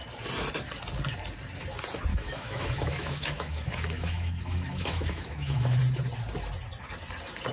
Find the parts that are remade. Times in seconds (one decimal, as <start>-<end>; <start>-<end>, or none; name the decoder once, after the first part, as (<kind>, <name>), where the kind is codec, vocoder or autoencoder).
2.1-5.8 (autoencoder, DAC-VAE)